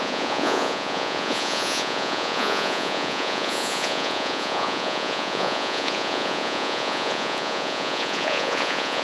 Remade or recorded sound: remade